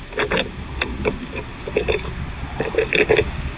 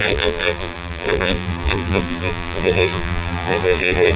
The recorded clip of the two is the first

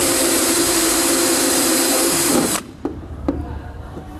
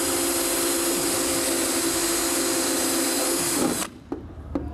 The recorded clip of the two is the second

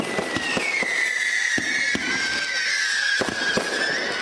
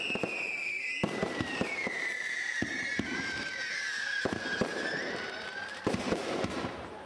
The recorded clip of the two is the first